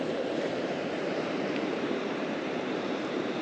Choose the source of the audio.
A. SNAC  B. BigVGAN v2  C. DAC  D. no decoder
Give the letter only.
B